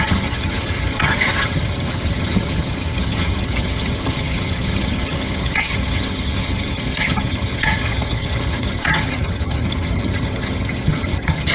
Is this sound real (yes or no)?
no